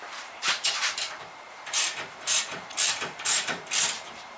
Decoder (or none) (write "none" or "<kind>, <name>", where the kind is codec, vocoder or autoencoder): vocoder, BigVGAN v2